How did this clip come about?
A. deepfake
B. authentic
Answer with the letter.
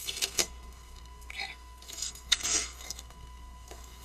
A